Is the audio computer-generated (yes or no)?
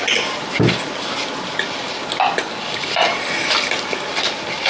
no